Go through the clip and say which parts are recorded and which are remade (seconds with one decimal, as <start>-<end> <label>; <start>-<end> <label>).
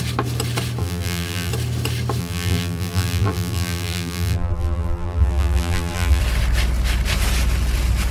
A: 0.0-0.8 recorded; 0.8-1.5 remade; 1.5-2.2 recorded; 2.2-6.2 remade; 6.2-8.1 recorded